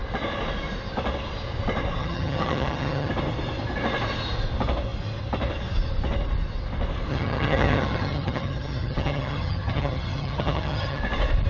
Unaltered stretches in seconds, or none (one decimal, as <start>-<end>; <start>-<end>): 0.0-2.0; 3.1-7.1; 11.0-11.5